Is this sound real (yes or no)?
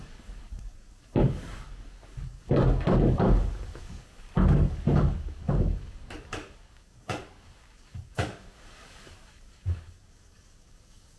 no